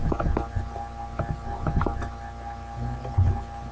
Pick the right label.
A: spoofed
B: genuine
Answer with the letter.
B